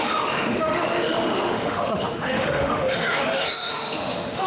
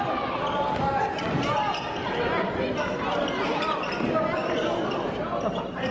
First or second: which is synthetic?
first